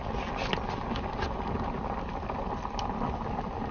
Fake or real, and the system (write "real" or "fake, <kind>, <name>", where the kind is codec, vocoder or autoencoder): real